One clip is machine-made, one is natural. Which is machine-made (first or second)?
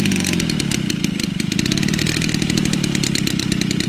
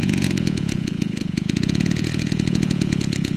second